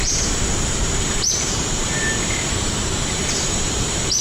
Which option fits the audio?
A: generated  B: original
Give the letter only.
A